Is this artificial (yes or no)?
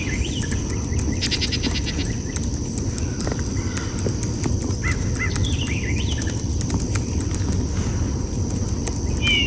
no